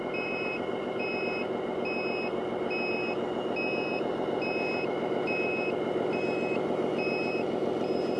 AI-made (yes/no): no